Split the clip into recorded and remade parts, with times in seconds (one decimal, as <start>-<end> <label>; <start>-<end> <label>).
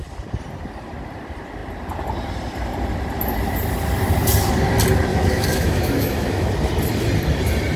0.0-5.1 recorded; 5.1-6.5 remade; 6.5-7.8 recorded